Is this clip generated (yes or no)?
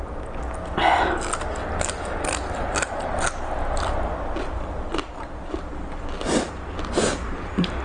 no